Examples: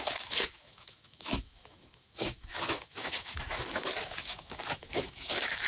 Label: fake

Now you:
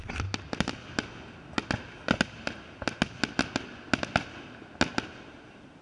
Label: real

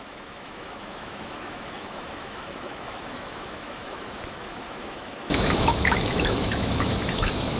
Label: fake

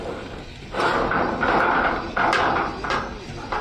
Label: real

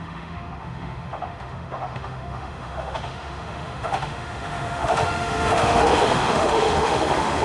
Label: fake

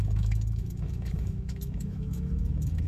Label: fake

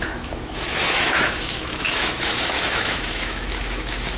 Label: fake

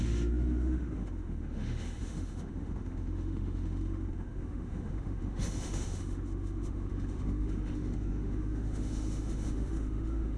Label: fake